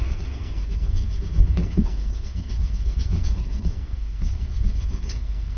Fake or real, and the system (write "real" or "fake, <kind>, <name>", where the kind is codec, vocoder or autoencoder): fake, codec, SNAC